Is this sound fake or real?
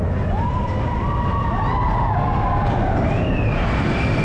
real